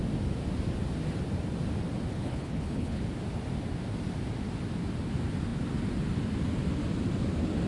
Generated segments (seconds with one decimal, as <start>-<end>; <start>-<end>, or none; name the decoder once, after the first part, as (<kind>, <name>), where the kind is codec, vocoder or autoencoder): 2.1-3.0 (codec, HILCodec)